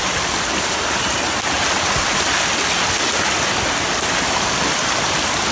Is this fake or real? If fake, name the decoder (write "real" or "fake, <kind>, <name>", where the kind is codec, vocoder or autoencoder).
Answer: real